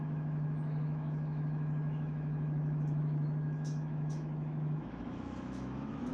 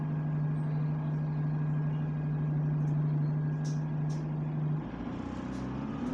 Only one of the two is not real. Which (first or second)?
first